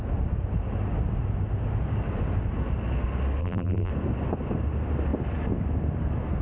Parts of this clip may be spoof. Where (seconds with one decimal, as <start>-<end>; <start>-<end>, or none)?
3.4-3.9